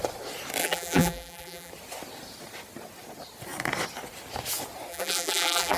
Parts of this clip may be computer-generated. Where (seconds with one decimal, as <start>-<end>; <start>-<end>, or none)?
0.6-1.7; 4.9-5.8